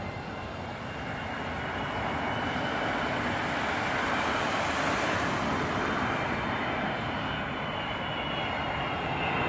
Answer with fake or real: real